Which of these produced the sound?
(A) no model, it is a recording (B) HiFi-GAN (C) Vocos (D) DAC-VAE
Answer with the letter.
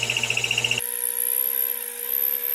A